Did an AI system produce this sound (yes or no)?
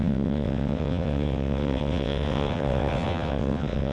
yes